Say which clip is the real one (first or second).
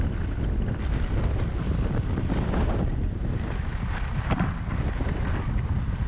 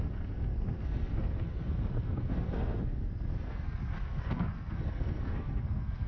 first